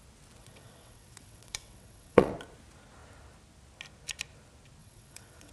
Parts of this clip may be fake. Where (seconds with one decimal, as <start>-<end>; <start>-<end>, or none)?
0.4-2.3; 4.8-5.5